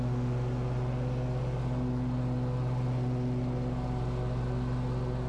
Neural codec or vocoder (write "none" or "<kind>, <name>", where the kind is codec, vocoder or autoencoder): none